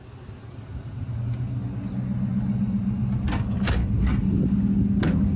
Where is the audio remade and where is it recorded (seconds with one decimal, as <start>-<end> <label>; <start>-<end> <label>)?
0.0-5.4 recorded